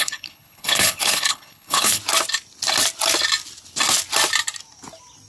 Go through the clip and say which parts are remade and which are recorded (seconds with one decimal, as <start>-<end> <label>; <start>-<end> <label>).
0.0-2.0 remade; 2.0-5.3 recorded